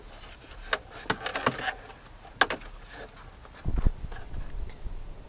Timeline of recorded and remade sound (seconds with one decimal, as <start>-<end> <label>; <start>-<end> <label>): 0.0-5.3 recorded